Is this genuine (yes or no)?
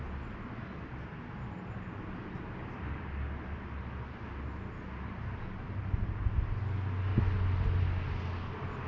yes